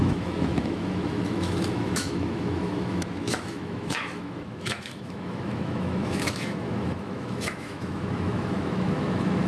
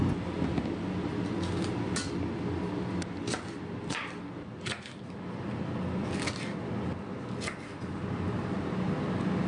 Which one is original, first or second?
second